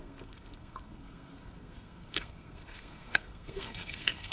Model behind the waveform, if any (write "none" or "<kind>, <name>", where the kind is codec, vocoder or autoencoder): codec, SNAC